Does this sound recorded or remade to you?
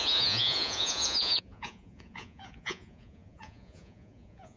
remade